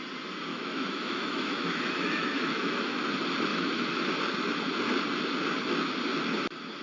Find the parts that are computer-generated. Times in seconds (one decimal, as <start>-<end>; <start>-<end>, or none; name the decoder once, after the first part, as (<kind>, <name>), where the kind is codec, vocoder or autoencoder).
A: 0.5-3.0 (autoencoder, DAC-VAE); 3.5-4.1